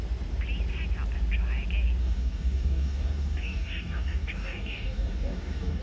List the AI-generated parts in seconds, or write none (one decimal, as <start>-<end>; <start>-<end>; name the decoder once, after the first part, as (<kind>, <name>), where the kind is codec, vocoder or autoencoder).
2.0-5.8 (codec, DAC)